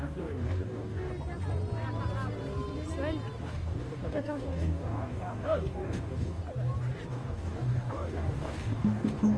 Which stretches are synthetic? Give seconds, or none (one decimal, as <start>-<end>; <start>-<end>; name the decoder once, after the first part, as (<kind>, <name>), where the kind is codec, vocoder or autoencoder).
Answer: 0.0-1.1 (codec, DAC); 3.4-6.4; 7.1-9.4